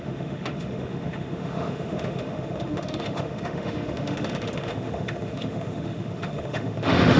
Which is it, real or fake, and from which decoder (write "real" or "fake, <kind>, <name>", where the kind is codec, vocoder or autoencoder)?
fake, autoencoder, DAC-VAE